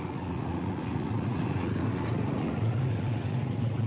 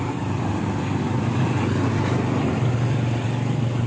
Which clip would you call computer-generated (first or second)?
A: first